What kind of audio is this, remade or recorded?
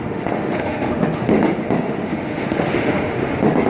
remade